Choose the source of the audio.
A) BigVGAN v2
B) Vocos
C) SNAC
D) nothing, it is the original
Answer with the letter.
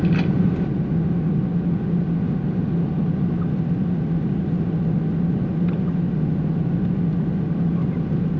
D